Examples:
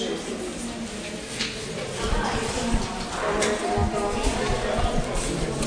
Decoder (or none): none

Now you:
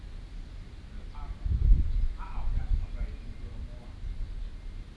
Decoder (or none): none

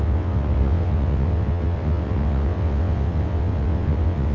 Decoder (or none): vocoder, WaveNeXt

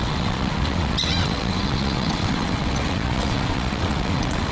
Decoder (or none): vocoder, WaveNeXt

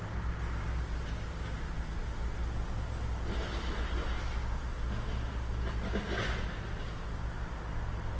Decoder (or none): none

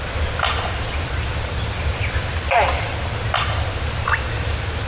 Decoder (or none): none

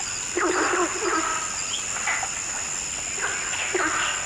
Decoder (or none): none